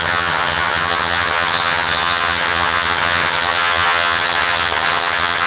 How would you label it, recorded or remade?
remade